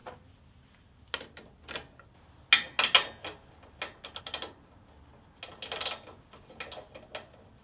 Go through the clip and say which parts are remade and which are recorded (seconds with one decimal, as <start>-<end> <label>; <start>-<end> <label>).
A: 0.0-7.6 recorded